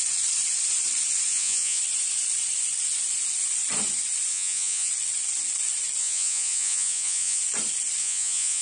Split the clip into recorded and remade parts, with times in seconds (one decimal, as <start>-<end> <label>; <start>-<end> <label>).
0.0-1.3 recorded; 1.3-1.8 remade; 1.8-4.3 recorded; 4.3-4.9 remade; 4.9-6.0 recorded; 6.0-7.4 remade; 7.4-8.0 recorded; 8.0-8.6 remade